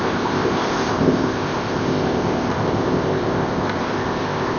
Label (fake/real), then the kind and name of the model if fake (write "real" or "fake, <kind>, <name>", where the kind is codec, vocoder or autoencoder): fake, codec, ZipCodec